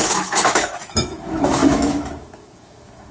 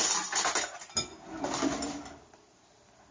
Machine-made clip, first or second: first